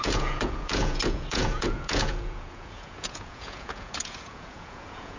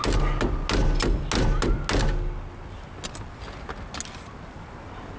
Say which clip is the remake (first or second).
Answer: first